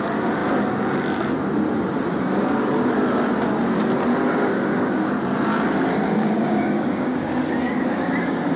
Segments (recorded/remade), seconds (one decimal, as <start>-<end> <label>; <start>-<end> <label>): 0.0-4.4 recorded; 4.4-5.1 remade; 5.1-6.2 recorded; 6.2-7.4 remade; 7.4-8.6 recorded